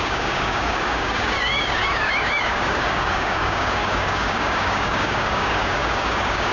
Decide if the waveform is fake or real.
fake